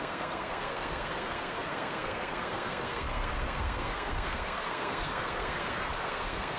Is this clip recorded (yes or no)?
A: no